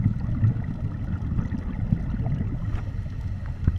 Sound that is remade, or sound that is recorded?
recorded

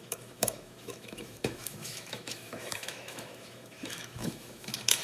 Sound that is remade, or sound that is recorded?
remade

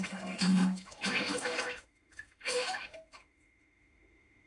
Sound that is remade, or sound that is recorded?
remade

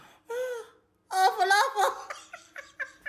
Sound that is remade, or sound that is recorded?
recorded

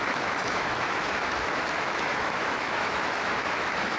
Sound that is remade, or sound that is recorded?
remade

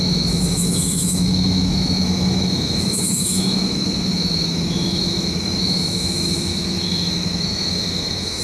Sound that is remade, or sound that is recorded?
remade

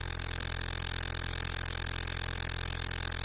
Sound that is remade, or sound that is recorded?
recorded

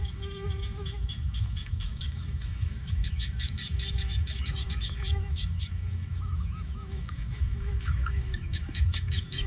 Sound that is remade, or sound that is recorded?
remade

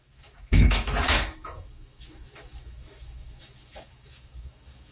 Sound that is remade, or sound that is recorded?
remade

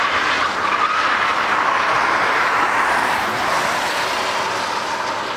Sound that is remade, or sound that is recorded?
recorded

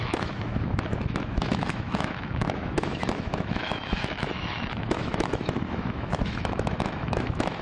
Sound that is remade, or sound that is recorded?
remade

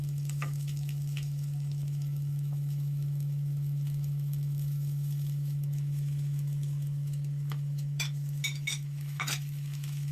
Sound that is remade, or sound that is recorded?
remade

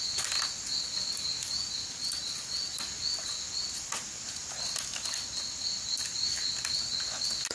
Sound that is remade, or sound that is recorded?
recorded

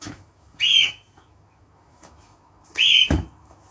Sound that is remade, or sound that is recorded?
remade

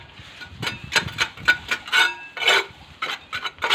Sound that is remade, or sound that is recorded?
recorded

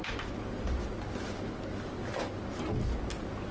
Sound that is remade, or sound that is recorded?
recorded